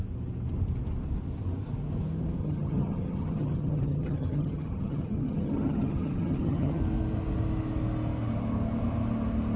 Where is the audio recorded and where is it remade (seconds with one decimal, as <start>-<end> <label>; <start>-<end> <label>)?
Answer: 0.0-2.4 recorded; 2.4-6.8 remade; 6.8-9.6 recorded